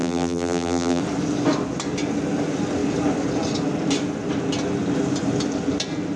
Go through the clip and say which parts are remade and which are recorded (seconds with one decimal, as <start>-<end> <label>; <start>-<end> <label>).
0.0-1.0 remade; 1.0-6.2 recorded